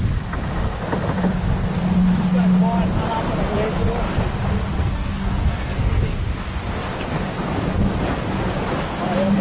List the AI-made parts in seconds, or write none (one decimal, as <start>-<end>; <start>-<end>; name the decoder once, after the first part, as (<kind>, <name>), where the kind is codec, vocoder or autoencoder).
4.8-6.0 (codec, SNAC)